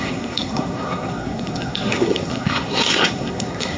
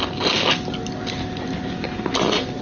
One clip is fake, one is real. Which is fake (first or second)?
first